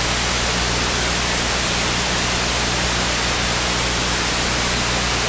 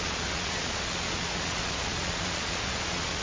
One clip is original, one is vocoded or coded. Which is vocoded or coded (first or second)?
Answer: second